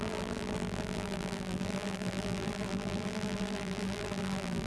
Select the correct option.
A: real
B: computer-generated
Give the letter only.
B